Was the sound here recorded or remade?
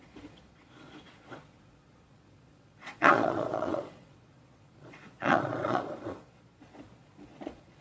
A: remade